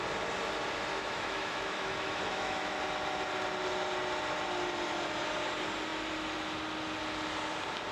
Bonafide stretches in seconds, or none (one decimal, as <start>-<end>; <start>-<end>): 0.0-0.9; 2.8-7.9